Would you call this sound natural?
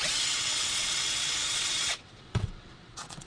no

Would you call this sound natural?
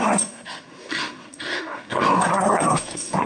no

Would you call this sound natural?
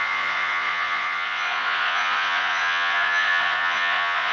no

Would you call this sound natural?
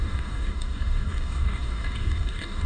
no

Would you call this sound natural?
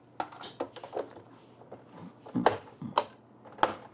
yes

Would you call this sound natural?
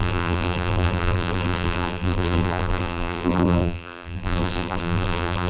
no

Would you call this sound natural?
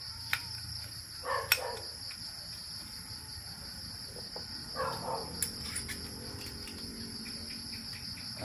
yes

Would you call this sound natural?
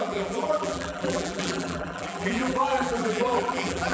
no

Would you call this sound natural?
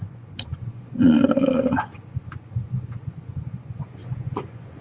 no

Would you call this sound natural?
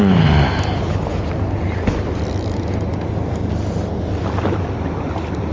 yes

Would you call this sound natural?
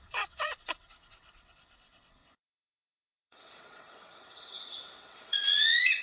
no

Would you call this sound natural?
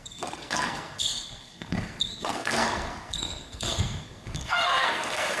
no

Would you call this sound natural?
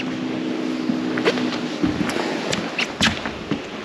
yes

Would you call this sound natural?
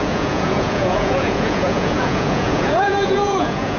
no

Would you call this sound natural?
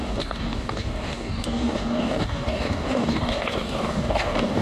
no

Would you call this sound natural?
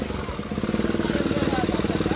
yes